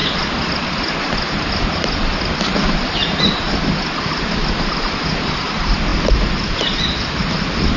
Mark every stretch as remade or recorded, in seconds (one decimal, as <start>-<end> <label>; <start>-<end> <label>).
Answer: 0.0-7.8 recorded